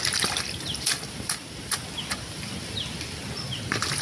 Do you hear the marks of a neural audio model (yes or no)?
no